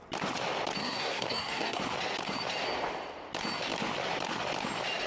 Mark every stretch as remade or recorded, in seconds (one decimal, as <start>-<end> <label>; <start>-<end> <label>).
0.0-0.8 recorded; 0.8-1.8 remade; 1.8-5.1 recorded